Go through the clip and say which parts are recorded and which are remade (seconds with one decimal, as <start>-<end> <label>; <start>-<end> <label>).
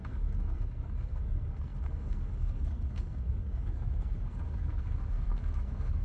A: 0.0-6.0 remade